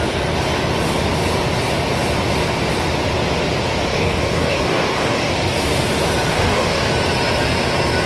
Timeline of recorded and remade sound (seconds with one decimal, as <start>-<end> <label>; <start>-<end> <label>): 0.0-3.9 recorded; 3.9-5.3 remade; 5.3-6.3 recorded; 6.3-6.9 remade; 6.9-8.1 recorded